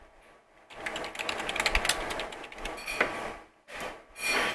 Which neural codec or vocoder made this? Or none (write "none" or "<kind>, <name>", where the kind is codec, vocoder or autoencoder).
none